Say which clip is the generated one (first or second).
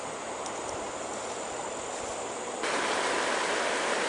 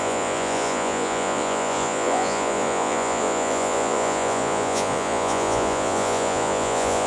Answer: second